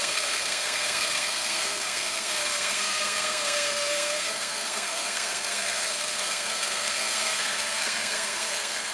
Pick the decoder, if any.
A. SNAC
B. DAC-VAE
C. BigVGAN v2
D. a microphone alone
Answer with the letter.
A